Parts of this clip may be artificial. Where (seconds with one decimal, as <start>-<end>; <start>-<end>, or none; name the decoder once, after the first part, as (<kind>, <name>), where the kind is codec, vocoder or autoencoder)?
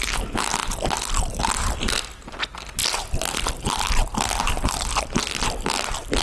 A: 0.6-1.4 (vocoder, BigVGAN v2)